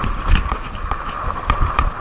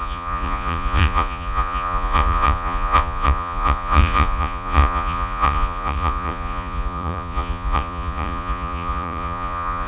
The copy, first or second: second